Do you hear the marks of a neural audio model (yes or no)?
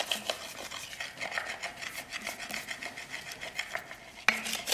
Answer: no